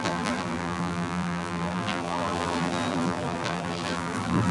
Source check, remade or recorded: remade